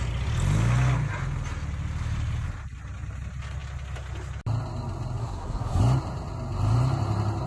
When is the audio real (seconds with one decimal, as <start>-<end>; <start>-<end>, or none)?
0.0-5.2; 5.8-7.5